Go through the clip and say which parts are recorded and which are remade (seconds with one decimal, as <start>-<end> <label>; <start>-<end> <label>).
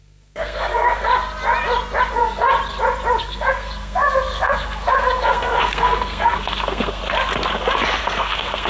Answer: 0.0-1.1 remade; 1.1-2.1 recorded; 2.1-2.5 remade; 2.5-3.2 recorded; 3.2-7.0 remade; 7.0-8.0 recorded; 8.0-8.7 remade